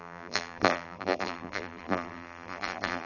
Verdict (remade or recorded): remade